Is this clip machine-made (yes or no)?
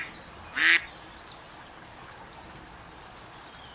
no